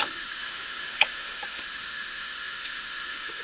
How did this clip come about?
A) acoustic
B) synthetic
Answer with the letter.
B